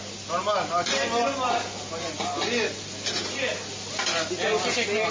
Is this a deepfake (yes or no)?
no